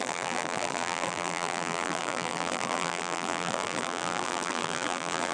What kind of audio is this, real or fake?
fake